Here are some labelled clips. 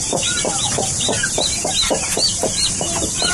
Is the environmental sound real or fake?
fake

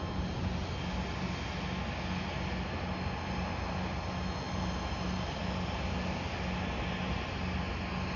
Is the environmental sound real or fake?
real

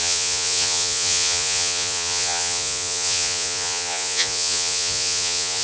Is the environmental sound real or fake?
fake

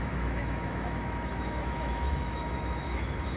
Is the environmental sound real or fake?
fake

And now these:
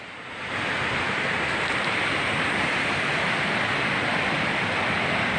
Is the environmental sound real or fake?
real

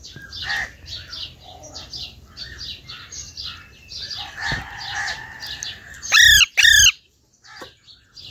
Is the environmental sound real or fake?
real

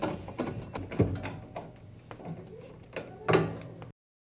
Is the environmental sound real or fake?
real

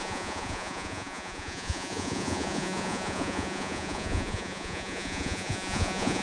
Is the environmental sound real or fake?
fake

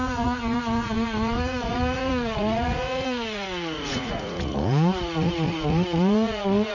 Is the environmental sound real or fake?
fake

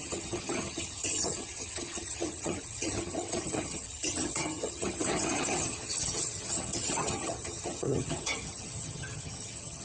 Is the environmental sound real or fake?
fake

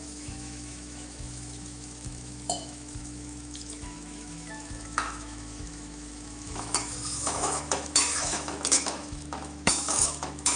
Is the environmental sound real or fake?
fake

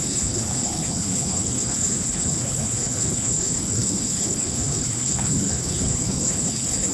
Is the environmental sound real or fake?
fake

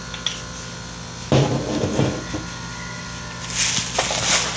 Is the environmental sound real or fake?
real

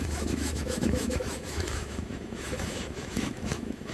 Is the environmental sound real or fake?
fake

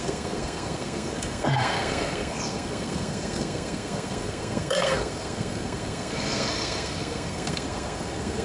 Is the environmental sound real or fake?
fake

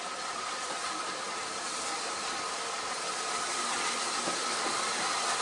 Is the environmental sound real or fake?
real